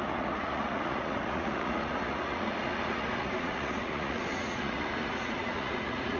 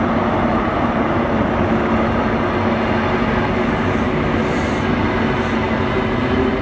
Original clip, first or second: second